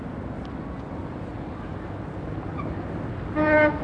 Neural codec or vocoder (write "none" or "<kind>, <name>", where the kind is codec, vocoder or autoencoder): none